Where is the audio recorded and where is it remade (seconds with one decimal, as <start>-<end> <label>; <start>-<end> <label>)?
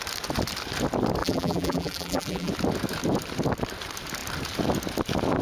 0.0-1.2 recorded; 1.2-2.5 remade; 2.5-5.4 recorded